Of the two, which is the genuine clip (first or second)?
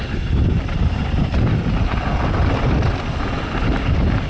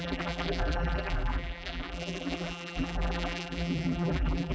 first